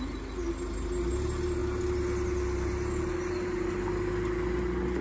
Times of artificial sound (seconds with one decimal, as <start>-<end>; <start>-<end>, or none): none